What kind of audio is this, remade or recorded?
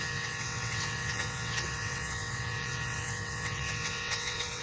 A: remade